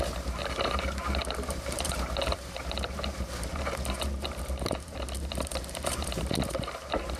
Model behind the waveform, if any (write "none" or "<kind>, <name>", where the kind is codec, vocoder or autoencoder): vocoder, BigVGAN v2